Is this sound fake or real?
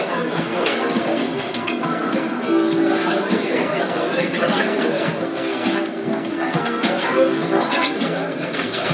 fake